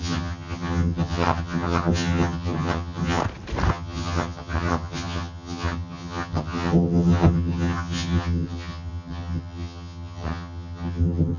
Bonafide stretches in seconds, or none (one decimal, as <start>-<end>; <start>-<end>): 3.2-3.7